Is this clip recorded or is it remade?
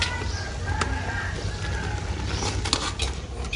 recorded